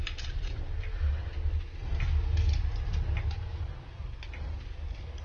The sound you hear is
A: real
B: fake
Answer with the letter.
A